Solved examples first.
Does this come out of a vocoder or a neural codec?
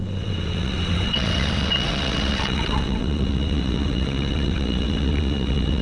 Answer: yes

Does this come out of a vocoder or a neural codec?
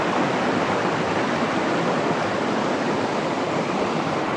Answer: no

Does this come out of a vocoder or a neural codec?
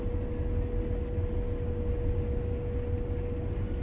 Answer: no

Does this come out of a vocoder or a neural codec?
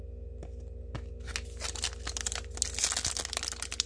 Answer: no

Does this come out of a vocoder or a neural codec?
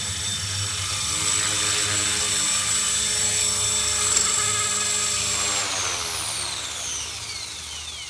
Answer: no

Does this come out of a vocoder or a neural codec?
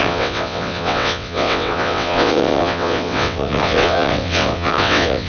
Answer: yes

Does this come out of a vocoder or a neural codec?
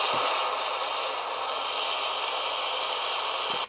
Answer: no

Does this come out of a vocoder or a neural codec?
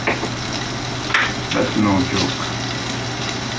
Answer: no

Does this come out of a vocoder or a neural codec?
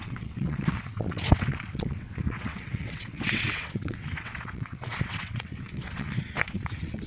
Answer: yes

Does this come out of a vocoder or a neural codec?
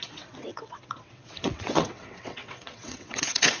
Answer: yes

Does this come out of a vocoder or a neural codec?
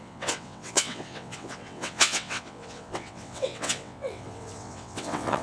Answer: yes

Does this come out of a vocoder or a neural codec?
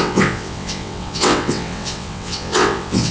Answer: yes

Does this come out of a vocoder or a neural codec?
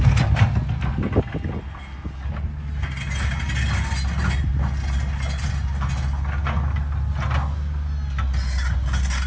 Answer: no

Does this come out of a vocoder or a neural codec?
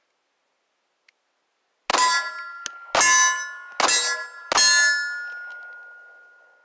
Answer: no